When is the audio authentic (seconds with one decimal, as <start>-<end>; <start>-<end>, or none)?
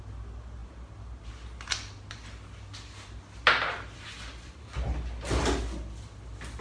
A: 0.0-6.6